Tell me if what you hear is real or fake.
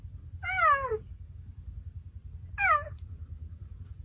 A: real